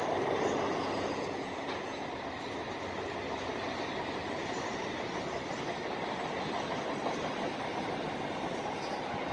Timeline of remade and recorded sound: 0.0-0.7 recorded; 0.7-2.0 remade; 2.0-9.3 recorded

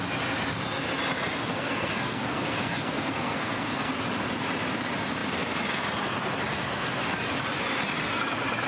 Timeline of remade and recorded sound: 0.0-1.5 recorded; 1.5-3.9 remade; 3.9-8.7 recorded

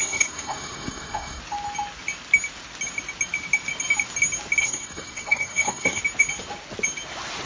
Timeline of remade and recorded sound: 0.0-1.4 remade; 1.4-4.6 recorded; 4.6-6.0 remade; 6.0-7.5 recorded

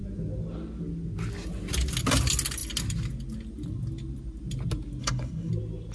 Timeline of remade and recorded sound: 0.0-5.0 recorded; 5.0-5.5 remade; 5.5-5.9 recorded